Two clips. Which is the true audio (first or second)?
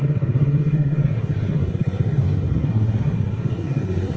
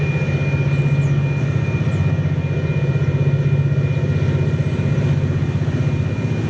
second